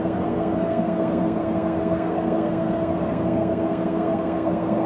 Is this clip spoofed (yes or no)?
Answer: yes